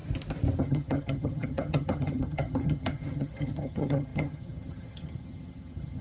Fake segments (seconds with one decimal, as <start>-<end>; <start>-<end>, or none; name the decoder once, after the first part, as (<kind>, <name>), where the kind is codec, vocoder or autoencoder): 0.6-6.0 (vocoder, HiFi-GAN)